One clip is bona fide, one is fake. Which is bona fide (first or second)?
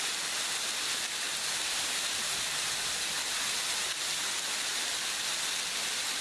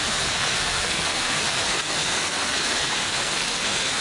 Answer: first